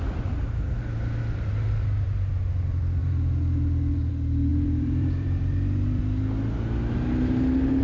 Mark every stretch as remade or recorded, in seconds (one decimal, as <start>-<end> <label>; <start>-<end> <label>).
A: 0.0-4.5 recorded; 4.5-6.0 remade; 6.0-7.8 recorded